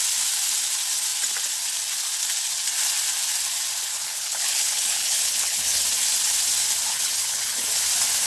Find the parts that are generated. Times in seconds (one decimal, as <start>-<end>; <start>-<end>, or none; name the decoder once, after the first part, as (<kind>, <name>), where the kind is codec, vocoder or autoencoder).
3.9-5.8 (codec, HILCodec); 6.9-7.8